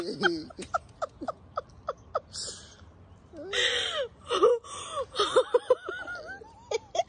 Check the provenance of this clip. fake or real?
real